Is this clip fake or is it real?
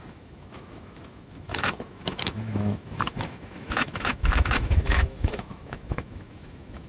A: fake